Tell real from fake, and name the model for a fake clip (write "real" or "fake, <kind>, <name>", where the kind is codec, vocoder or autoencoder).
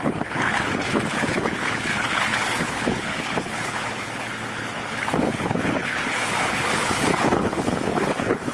fake, codec, HILCodec